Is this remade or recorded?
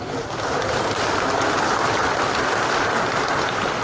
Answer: recorded